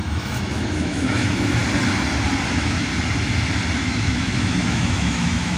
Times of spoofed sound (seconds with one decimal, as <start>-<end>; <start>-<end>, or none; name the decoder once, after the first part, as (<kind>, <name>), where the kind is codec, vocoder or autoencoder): 0.0-1.6 (autoencoder, DAC-VAE); 2.5-2.9; 3.8-5.6